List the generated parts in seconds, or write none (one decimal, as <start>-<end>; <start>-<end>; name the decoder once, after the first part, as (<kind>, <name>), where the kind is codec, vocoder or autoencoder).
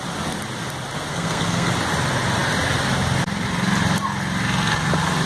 1.1-1.7 (codec, SNAC)